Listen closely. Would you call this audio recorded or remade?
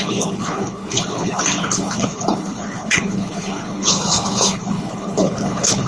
remade